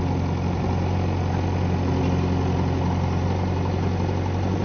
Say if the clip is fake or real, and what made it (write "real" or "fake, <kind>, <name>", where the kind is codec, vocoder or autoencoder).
real